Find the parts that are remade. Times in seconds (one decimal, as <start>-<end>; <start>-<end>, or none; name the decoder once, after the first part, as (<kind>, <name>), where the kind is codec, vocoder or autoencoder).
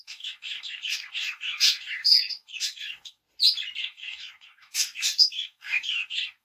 0.0-3.2 (codec, DAC); 3.8-6.4